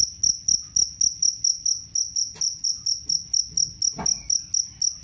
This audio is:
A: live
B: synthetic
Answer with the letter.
A